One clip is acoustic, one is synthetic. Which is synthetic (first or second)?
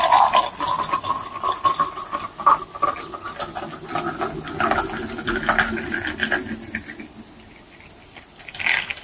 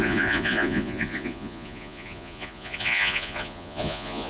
second